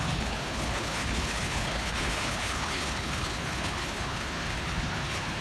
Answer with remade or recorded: remade